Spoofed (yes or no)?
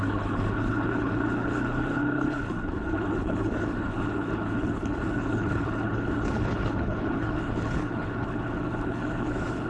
yes